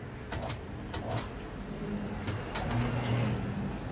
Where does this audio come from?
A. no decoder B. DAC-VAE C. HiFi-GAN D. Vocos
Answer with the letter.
A